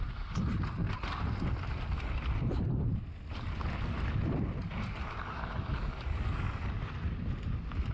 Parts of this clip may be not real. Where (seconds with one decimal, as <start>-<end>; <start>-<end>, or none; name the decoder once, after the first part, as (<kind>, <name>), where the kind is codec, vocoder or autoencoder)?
5.0-6.7 (codec, DAC)